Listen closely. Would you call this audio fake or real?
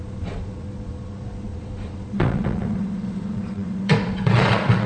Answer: fake